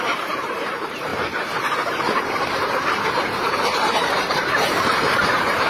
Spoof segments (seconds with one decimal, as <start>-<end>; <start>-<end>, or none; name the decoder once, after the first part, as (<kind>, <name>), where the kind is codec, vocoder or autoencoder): 0.0-1.1 (vocoder, BigVGAN v2); 3.5-5.7